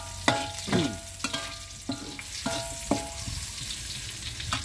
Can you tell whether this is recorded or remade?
recorded